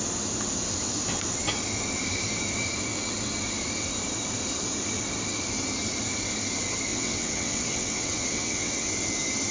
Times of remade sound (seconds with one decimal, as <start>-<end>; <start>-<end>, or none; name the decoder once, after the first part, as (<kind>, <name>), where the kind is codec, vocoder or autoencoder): 6.9-8.9 (vocoder, WaveNeXt)